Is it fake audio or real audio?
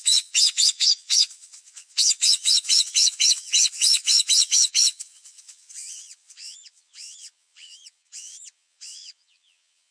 fake